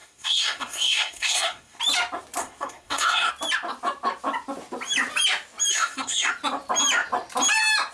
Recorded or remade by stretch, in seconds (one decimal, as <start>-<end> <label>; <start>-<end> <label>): 0.0-1.8 remade; 1.8-2.4 recorded; 2.4-3.3 remade; 3.3-5.7 recorded; 5.7-6.3 remade; 6.3-7.9 recorded